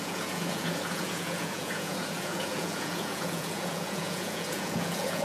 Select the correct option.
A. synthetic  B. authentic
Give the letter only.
A